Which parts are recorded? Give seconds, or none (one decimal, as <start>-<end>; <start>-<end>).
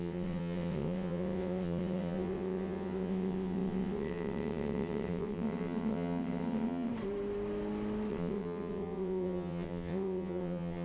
6.9-8.1